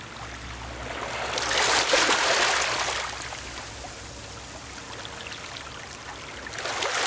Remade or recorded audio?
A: recorded